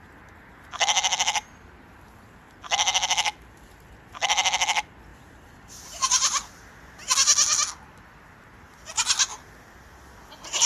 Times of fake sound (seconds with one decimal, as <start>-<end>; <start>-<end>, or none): 5.1-6.9